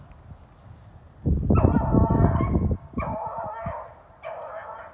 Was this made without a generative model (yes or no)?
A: yes